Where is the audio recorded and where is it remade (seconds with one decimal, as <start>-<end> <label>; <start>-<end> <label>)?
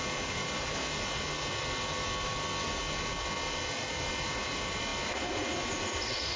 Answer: 0.0-6.4 recorded